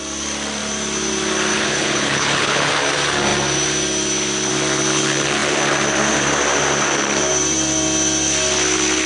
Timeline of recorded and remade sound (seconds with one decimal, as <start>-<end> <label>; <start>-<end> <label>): 0.0-1.5 recorded; 1.5-2.7 remade; 2.7-9.1 recorded